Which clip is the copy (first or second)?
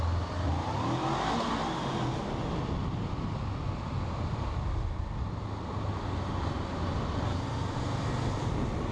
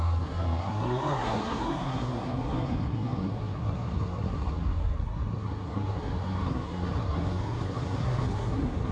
second